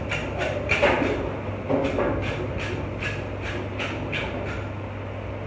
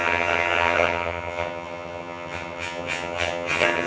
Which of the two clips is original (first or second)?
first